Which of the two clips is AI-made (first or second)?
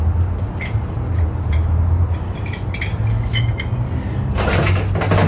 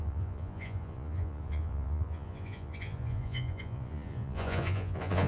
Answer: second